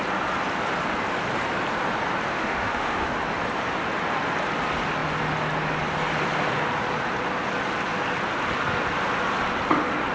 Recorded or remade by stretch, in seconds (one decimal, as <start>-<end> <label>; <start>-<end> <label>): 0.0-2.3 recorded; 2.3-3.1 remade; 3.1-10.1 recorded